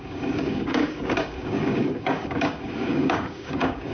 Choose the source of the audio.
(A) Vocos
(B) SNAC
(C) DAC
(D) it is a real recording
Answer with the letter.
C